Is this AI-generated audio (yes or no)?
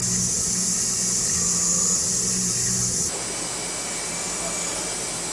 no